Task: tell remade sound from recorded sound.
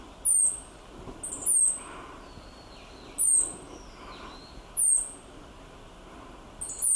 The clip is recorded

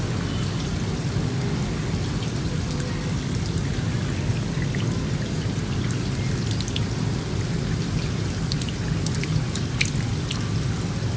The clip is recorded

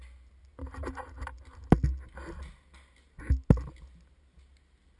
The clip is recorded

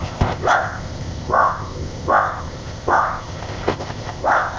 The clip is remade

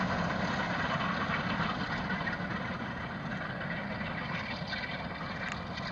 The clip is recorded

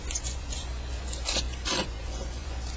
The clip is remade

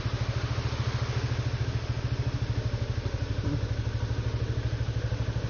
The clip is recorded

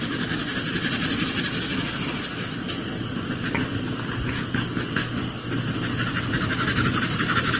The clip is recorded